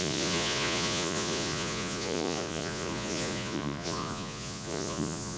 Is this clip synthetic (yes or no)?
yes